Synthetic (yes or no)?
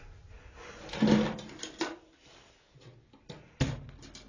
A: no